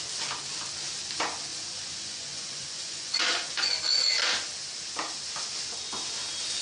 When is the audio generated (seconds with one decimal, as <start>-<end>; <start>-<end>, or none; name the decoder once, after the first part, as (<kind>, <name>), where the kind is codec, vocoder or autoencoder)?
1.5-3.7 (vocoder, Vocos)